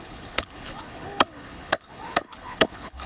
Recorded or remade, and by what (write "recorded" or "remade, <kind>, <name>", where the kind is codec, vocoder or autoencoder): remade, codec, HILCodec